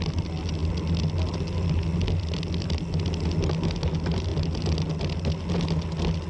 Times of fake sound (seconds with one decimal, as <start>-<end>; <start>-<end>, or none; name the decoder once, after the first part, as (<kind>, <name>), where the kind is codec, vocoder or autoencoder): none